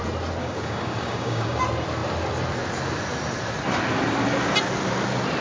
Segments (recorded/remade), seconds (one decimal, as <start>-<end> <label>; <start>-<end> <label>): 0.0-0.4 recorded; 0.4-1.6 remade; 1.6-5.4 recorded